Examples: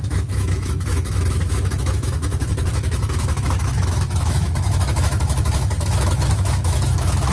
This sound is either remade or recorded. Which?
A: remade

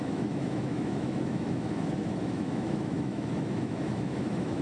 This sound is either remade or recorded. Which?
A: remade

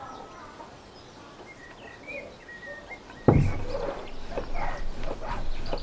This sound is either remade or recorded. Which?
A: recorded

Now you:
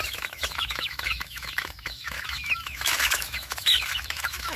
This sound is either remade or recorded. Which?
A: remade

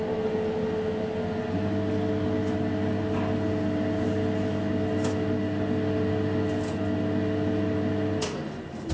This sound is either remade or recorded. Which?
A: recorded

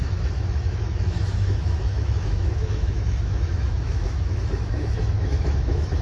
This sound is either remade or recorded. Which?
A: remade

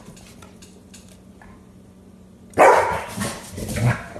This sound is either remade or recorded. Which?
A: recorded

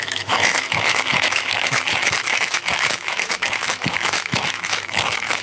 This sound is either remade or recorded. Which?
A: remade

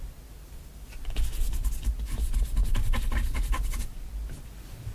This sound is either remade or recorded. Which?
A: recorded